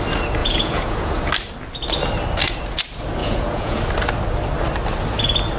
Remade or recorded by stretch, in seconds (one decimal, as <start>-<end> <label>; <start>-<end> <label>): 0.0-0.4 recorded; 0.4-1.3 remade; 1.3-3.2 recorded; 3.2-3.8 remade; 3.8-5.6 recorded